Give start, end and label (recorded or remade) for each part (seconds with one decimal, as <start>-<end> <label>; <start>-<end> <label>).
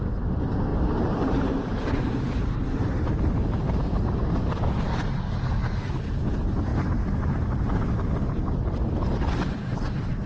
0.0-0.7 recorded; 0.7-4.0 remade; 4.0-10.3 recorded